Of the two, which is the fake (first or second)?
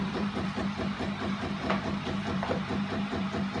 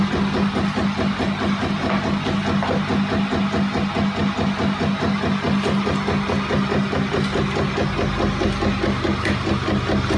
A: first